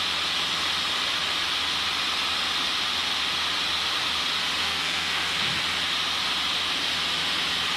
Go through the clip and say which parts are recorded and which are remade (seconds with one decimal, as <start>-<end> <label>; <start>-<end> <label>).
0.0-4.6 recorded; 4.6-5.5 remade; 5.5-7.8 recorded